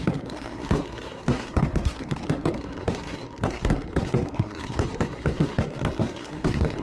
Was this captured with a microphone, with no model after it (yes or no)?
no